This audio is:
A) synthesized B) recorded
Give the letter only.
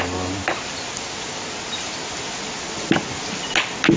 B